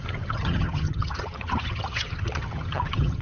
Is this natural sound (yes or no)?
no